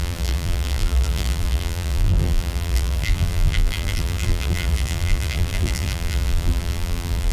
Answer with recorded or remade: remade